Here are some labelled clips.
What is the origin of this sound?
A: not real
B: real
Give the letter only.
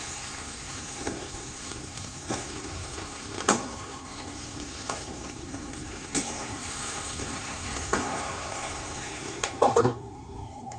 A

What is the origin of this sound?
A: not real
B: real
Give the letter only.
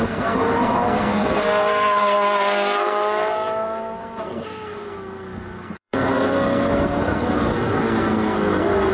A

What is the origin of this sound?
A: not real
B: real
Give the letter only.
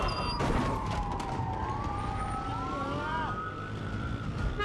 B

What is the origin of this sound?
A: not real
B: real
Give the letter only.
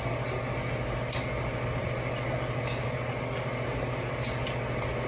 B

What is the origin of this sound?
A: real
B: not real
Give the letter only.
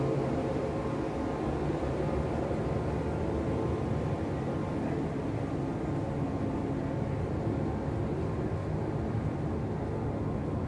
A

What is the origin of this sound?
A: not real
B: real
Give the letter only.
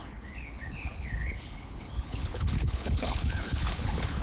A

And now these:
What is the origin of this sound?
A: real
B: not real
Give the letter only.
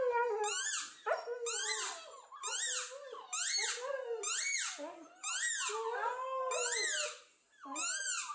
A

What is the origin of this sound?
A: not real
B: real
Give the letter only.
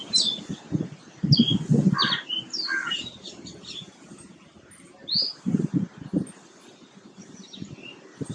B